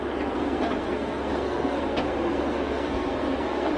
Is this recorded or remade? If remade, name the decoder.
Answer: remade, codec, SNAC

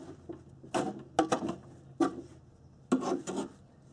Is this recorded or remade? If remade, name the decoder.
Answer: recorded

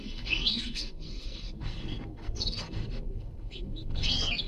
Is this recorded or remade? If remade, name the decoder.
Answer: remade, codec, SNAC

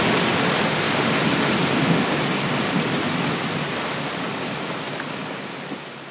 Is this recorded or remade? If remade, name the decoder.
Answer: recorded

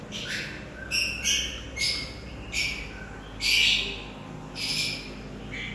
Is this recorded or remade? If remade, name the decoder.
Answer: recorded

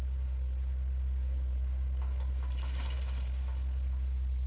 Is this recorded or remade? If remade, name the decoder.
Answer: recorded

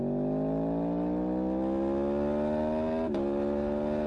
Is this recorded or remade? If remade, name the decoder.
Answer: recorded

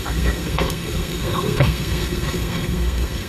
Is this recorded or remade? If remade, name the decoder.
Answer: remade, codec, SNAC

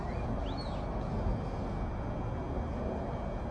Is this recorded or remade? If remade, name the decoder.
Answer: recorded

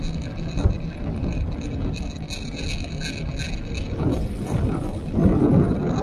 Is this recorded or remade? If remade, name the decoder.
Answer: recorded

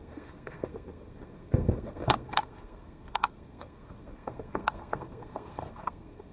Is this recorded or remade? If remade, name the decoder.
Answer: remade, codec, SNAC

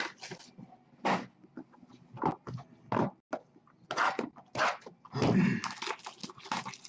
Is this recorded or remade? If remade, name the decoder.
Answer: recorded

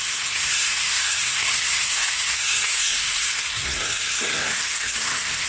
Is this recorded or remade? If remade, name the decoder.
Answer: remade, codec, SNAC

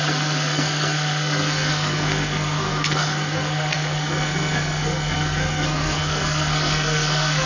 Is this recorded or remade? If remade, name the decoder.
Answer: remade, codec, SNAC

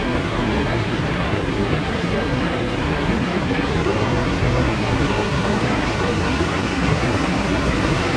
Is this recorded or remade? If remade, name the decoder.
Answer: remade, codec, SNAC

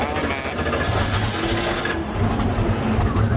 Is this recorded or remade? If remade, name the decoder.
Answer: recorded